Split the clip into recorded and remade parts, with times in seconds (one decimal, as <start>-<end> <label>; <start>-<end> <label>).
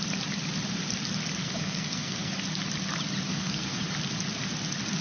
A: 0.0-1.4 recorded; 1.4-2.3 remade; 2.3-3.3 recorded; 3.3-3.8 remade; 3.8-5.0 recorded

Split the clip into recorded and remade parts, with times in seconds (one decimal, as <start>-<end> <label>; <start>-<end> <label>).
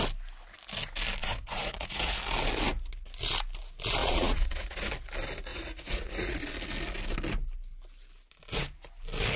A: 0.0-1.2 recorded; 1.2-2.2 remade; 2.2-4.0 recorded; 4.0-4.9 remade; 4.9-5.5 recorded; 5.5-6.5 remade; 6.5-9.4 recorded